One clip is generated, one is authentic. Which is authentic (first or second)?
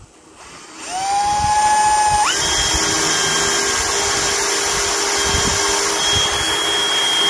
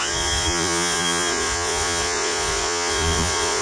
first